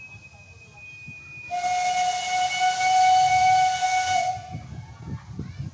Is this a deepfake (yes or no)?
no